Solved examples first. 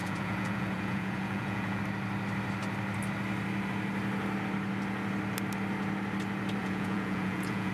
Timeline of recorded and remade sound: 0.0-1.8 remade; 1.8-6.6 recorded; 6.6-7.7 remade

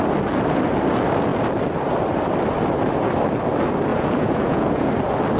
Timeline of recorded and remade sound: 0.0-3.9 recorded; 3.9-4.9 remade; 4.9-5.4 recorded

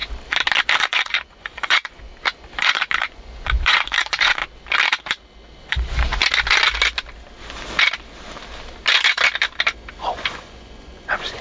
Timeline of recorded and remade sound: 0.0-0.8 recorded; 0.8-2.1 remade; 2.1-2.6 recorded; 2.6-4.4 remade; 4.4-5.6 recorded; 5.6-6.1 remade; 6.1-9.9 recorded; 9.9-11.4 remade

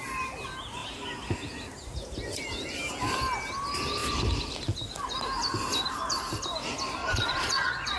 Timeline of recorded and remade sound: 0.0-7.0 recorded; 7.0-8.0 remade

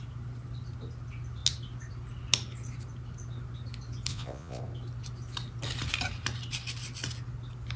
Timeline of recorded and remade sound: 0.0-4.1 recorded; 4.1-4.6 remade; 4.6-7.8 recorded